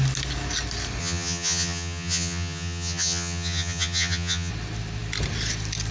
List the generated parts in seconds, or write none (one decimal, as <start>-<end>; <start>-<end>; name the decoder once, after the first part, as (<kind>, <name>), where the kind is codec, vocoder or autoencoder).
1.0-4.5 (vocoder, HiFi-GAN)

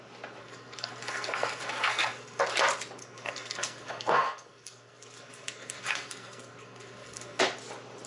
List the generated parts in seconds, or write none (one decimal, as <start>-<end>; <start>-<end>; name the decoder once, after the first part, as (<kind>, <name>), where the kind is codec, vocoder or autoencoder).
0.4-2.4 (codec, SNAC); 3.0-7.4